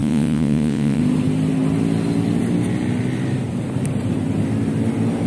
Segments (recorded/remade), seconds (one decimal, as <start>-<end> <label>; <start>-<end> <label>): 0.0-1.0 remade; 1.0-5.3 recorded